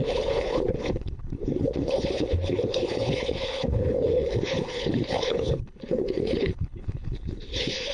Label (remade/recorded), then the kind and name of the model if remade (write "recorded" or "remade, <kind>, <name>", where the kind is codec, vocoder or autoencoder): remade, codec, HILCodec